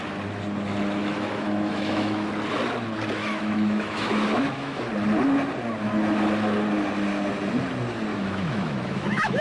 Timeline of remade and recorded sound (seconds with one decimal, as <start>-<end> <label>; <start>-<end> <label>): 0.0-1.0 recorded; 1.0-2.3 remade; 2.3-3.2 recorded; 3.2-4.8 remade; 4.8-8.1 recorded; 8.1-9.4 remade